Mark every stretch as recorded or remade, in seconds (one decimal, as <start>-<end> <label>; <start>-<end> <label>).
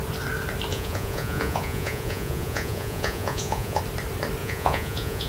0.0-0.7 recorded; 0.7-3.8 remade; 3.8-4.4 recorded; 4.4-5.3 remade